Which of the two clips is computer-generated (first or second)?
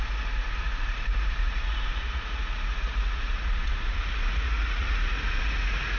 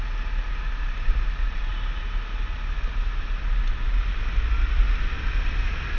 first